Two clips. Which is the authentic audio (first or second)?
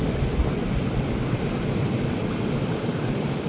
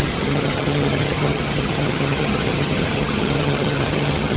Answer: first